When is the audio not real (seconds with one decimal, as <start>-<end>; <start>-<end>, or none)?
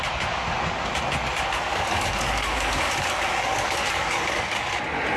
1.7-4.8